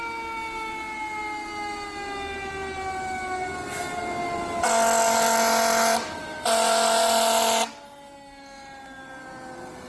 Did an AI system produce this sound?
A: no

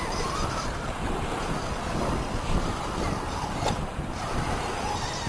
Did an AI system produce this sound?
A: yes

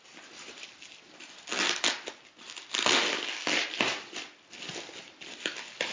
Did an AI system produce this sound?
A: no